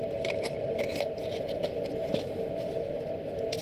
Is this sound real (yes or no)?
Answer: no